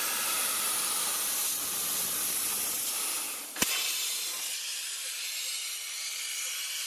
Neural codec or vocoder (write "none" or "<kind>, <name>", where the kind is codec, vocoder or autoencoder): none